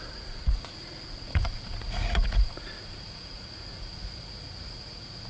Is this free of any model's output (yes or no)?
no